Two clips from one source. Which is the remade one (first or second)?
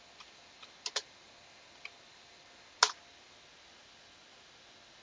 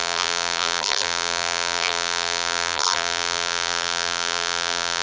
second